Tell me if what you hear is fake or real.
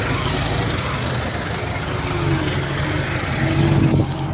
real